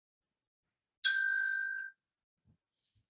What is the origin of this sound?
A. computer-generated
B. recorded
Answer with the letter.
B